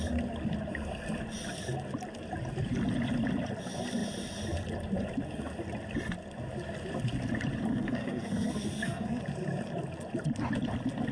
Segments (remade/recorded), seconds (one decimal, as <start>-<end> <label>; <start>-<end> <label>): 0.0-7.7 recorded; 7.7-9.2 remade; 9.2-11.1 recorded